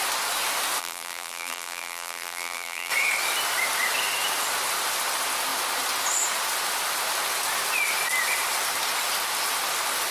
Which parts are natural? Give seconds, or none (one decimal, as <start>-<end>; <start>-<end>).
0.0-0.8; 2.9-10.1